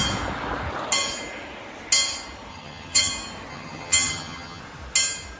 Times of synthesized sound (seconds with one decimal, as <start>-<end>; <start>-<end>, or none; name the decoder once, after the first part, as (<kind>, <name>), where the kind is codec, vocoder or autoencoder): 2.5-3.1 (vocoder, HiFi-GAN); 3.5-4.6